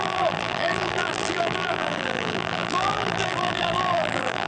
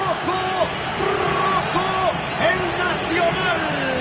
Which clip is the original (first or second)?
second